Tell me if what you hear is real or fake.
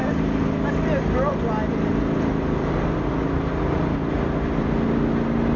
real